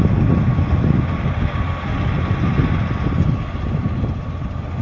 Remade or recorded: recorded